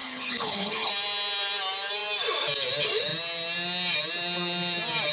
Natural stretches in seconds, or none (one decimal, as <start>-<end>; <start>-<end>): 0.9-5.1